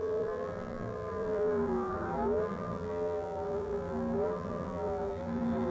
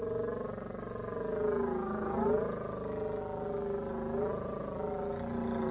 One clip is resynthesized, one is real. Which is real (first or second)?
second